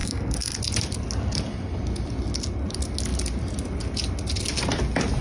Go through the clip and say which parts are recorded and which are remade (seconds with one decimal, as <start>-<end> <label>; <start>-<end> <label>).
0.0-0.6 remade; 0.6-5.2 recorded